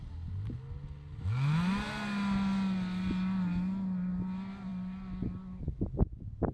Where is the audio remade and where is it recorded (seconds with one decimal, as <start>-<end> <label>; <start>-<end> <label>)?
0.0-6.5 recorded